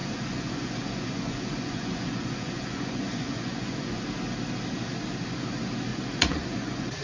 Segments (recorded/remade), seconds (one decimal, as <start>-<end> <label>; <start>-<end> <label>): 0.0-4.0 remade; 4.0-5.9 recorded; 5.9-7.0 remade